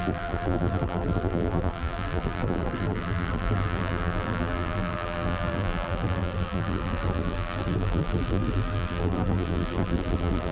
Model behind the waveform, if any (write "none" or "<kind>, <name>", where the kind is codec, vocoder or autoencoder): vocoder, BigVGAN v2